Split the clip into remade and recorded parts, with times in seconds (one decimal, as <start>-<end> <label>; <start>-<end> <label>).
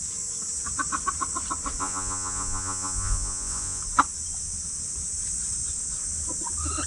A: 0.0-1.8 recorded; 1.8-3.8 remade; 3.8-6.9 recorded